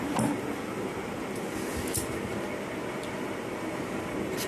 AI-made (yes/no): no